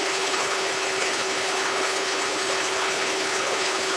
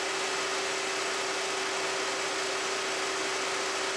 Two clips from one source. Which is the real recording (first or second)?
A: second